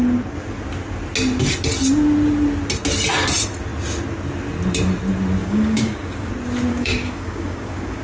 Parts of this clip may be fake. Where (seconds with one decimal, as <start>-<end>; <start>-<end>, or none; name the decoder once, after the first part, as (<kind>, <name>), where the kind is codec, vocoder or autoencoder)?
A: 5.4-6.3 (codec, DAC); 6.7-8.0